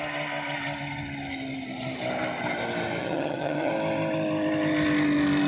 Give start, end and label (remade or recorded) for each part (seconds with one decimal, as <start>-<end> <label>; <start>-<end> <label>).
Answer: 0.0-3.0 recorded; 3.0-3.7 remade; 3.7-5.5 recorded